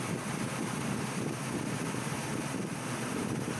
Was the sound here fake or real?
fake